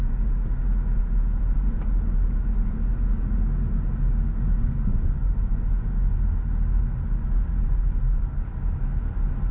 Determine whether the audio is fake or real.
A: real